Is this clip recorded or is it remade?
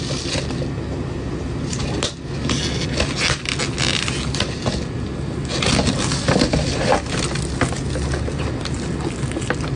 recorded